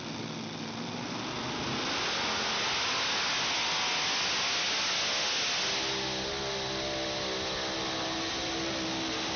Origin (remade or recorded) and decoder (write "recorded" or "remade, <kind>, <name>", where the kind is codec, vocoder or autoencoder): recorded